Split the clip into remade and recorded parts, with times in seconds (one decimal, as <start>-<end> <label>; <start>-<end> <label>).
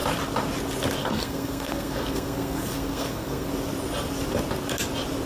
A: 0.0-1.0 recorded; 1.0-3.5 remade; 3.5-5.3 recorded